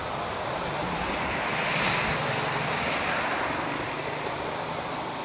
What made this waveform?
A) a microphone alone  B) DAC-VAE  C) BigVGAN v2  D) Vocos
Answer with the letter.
A